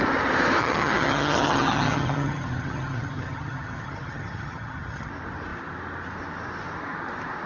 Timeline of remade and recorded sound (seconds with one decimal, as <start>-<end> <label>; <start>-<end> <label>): 0.0-0.6 recorded; 0.6-5.1 remade; 5.1-7.5 recorded